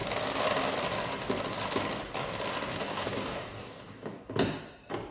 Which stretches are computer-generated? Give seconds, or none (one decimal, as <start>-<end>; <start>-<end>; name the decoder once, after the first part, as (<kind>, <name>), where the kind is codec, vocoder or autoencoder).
2.7-4.3 (codec, DAC)